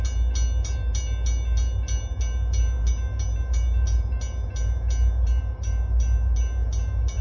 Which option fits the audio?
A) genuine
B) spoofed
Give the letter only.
A